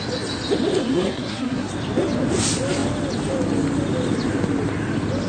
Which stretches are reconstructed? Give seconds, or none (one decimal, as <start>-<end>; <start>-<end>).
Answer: 0.8-1.7